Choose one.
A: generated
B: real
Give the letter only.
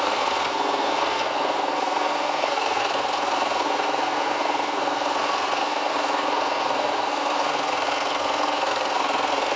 A